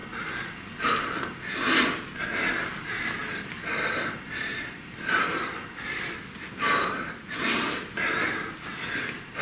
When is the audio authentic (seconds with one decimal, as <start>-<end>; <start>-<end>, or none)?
0.0-3.2; 8.2-9.4